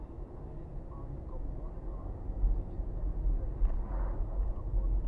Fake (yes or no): no